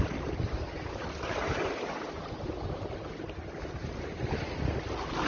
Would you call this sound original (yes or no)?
yes